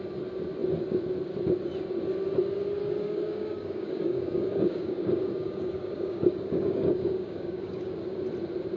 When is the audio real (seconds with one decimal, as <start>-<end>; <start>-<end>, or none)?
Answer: 0.0-2.8; 8.0-8.8